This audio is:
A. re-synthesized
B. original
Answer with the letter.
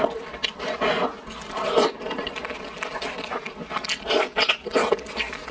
B